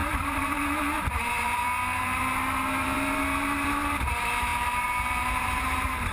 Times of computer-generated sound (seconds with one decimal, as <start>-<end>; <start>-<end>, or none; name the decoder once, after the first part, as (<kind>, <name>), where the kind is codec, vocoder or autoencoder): 0.0-6.1 (vocoder, BigVGAN v2)